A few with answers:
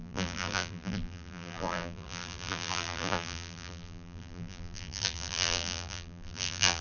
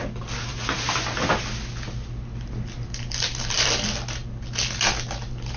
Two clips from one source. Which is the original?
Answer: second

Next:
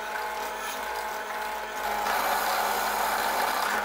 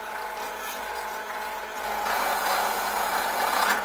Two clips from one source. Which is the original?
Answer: first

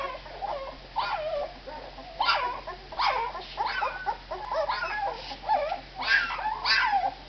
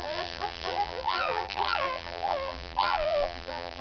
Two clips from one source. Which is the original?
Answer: first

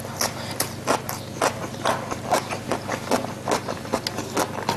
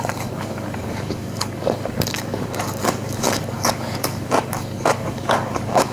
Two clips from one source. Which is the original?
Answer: first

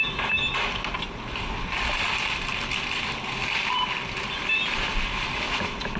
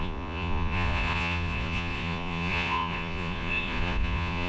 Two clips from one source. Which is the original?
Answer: first